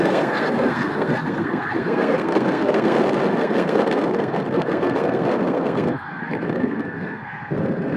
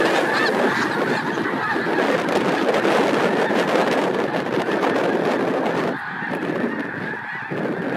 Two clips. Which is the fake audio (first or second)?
first